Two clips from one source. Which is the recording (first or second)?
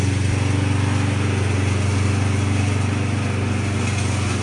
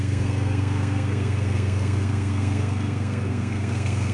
first